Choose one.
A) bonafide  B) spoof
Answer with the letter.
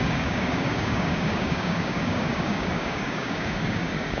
B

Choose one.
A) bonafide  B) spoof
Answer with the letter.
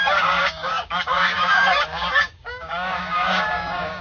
B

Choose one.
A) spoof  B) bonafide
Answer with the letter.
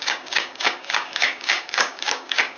A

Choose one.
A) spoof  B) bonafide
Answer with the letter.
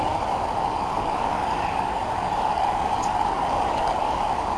A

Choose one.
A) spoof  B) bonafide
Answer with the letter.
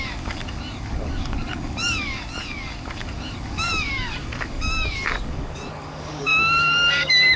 A